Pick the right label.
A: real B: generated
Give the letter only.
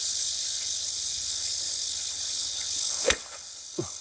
B